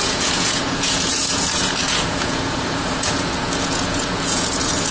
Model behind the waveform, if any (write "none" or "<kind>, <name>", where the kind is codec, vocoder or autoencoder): vocoder, Vocos